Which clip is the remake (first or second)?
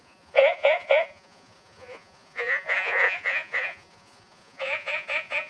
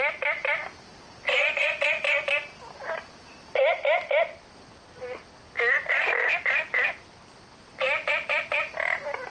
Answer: first